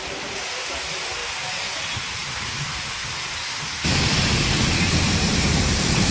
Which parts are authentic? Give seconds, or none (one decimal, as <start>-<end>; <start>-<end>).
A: 1.2-1.8